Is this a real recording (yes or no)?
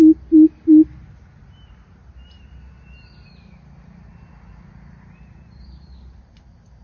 yes